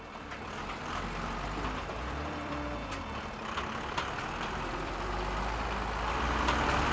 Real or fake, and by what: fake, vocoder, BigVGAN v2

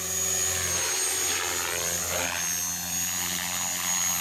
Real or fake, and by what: real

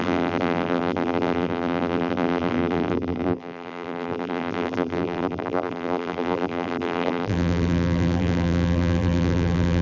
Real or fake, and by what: fake, vocoder, BigVGAN v2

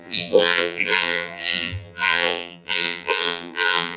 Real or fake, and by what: fake, vocoder, BigVGAN v2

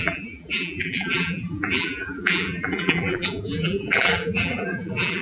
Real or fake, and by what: fake, vocoder, BigVGAN v2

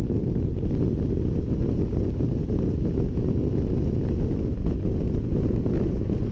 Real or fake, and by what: real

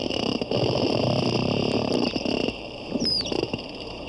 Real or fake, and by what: fake, vocoder, BigVGAN v2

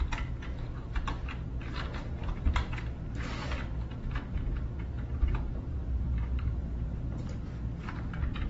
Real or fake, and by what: fake, vocoder, BigVGAN v2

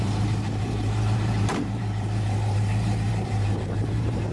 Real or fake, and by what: fake, vocoder, BigVGAN v2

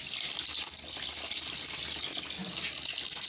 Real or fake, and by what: real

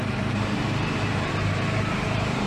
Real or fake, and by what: fake, vocoder, BigVGAN v2